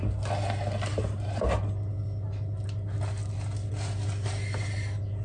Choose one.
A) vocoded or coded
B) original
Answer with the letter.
B